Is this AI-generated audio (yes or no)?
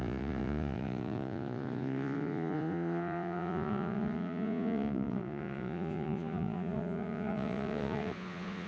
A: yes